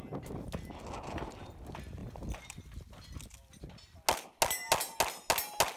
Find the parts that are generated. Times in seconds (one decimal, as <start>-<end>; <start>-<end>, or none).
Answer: none